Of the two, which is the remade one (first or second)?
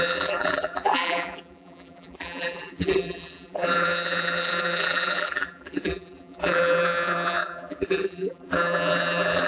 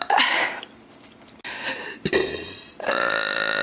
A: first